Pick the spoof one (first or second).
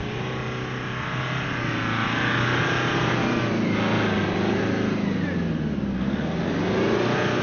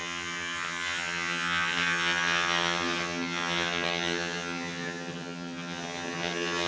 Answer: second